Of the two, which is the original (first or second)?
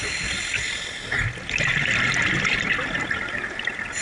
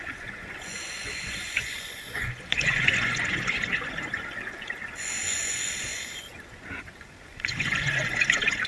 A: first